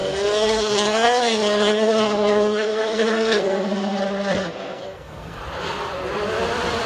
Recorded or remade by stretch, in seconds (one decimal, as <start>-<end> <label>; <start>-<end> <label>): 0.0-4.0 remade; 4.0-4.4 recorded; 4.4-5.4 remade; 5.4-6.9 recorded